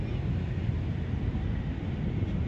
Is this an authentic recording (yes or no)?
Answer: yes